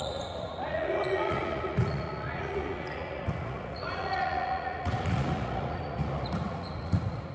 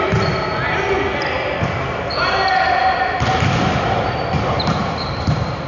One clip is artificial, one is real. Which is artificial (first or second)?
first